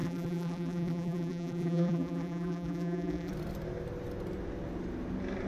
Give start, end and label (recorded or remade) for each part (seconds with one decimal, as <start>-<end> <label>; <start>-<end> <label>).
0.0-3.3 remade; 3.3-5.5 recorded